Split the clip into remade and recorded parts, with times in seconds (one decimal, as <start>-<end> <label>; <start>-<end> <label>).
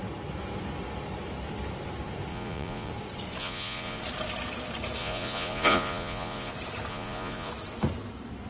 0.0-2.3 recorded; 2.3-2.9 remade; 2.9-3.4 recorded; 3.4-4.0 remade; 4.0-5.0 recorded; 5.0-6.5 remade; 6.5-6.9 recorded; 6.9-7.5 remade; 7.5-8.5 recorded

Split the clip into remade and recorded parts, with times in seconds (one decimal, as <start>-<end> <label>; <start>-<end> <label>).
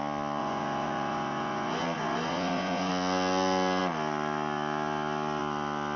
0.0-0.4 recorded; 0.4-2.9 remade; 2.9-6.0 recorded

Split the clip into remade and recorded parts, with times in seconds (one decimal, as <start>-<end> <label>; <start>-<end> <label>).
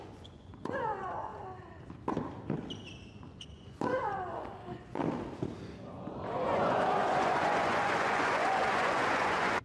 0.0-1.3 remade; 1.3-3.1 recorded; 3.1-5.0 remade; 5.0-5.8 recorded; 5.8-9.6 remade